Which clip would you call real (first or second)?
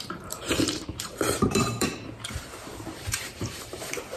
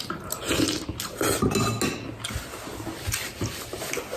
second